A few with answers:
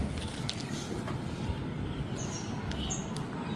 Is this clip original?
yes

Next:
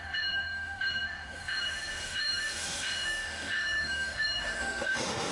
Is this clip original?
no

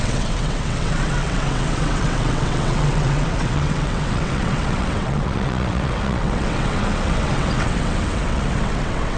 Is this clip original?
no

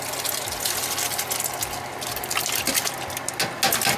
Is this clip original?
yes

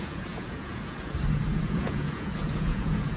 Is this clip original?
no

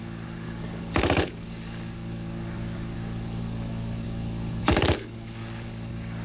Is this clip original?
no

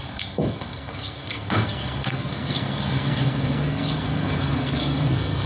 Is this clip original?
no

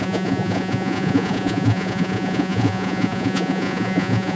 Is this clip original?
no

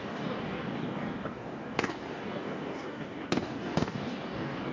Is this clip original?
no